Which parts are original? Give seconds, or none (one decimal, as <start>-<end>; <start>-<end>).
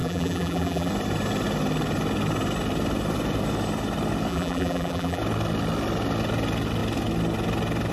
0.9-4.3; 5.2-7.9